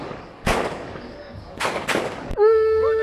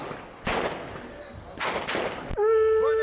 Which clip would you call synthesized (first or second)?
first